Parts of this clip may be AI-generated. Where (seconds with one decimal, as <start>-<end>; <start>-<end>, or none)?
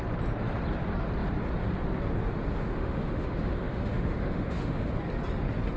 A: 2.6-4.9